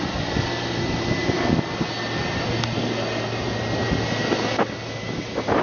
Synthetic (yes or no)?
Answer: no